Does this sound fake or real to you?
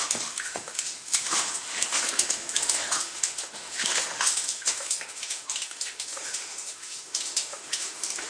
fake